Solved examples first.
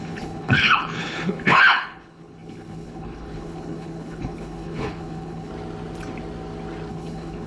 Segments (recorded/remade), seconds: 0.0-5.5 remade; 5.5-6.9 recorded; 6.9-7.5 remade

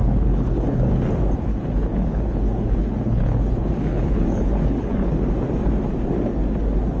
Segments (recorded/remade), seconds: 0.0-0.9 remade; 0.9-1.5 recorded; 1.5-5.1 remade; 5.1-7.0 recorded

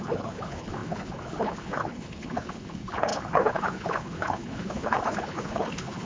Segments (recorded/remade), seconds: 0.0-6.1 remade

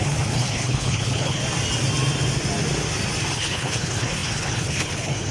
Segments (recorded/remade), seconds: 0.0-1.4 remade; 1.4-3.3 recorded; 3.3-5.3 remade

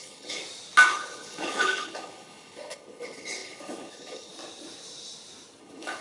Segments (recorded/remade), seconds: 0.0-0.4 remade; 0.4-0.9 recorded; 0.9-4.3 remade; 4.3-5.6 recorded; 5.6-6.0 remade

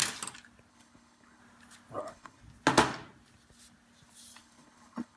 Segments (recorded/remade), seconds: 0.0-0.7 recorded; 0.7-1.4 remade; 1.4-2.0 recorded; 2.0-2.4 remade; 2.4-4.4 recorded; 4.4-5.2 remade

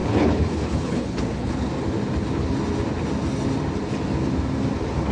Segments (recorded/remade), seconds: 0.0-1.7 remade; 1.7-5.1 recorded

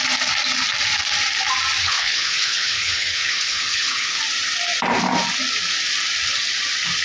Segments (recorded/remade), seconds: 0.0-1.8 recorded; 1.8-4.2 remade; 4.2-7.0 recorded